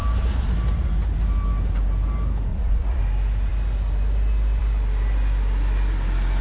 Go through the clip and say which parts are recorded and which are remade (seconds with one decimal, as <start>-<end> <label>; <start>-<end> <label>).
0.0-2.5 recorded; 2.5-3.0 remade; 3.0-6.4 recorded